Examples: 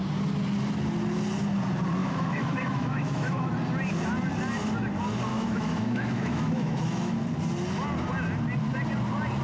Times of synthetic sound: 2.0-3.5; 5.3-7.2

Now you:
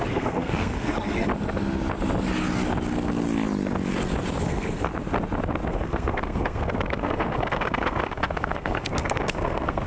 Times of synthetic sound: 0.0-1.3; 4.4-4.9; 5.7-9.9